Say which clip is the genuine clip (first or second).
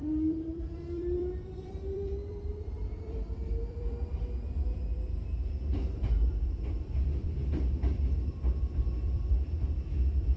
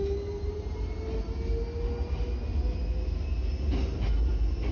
second